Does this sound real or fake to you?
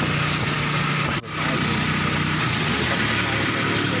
real